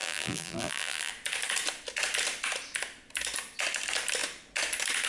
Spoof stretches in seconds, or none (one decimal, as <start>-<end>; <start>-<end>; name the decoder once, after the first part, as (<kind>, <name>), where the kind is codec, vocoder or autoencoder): 0.0-1.1 (vocoder, BigVGAN v2)